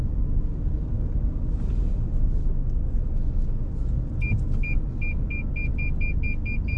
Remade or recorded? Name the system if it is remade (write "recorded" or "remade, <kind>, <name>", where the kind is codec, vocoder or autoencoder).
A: recorded